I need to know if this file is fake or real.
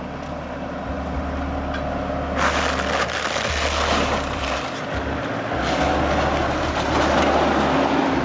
real